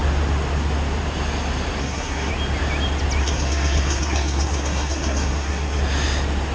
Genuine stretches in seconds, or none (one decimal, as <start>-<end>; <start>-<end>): 0.0-1.8; 2.3-3.2; 5.8-6.5